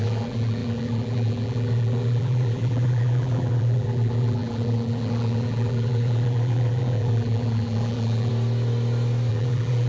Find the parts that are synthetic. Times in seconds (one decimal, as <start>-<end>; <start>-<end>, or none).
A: 0.0-8.3; 9.3-9.9